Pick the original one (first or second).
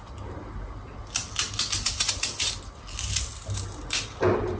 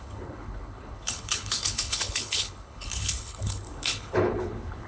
first